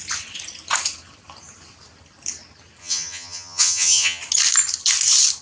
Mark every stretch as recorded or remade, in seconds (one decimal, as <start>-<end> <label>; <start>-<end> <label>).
0.0-2.8 recorded; 2.8-4.2 remade; 4.2-5.4 recorded